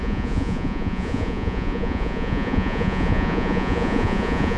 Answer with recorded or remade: remade